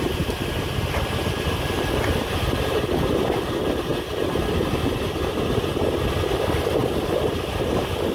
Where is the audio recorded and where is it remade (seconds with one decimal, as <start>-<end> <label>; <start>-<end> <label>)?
0.0-6.8 recorded; 6.8-7.4 remade; 7.4-8.1 recorded